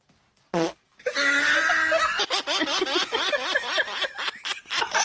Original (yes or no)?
yes